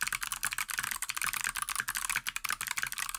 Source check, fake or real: real